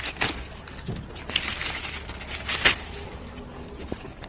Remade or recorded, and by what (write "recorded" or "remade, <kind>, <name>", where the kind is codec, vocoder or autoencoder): recorded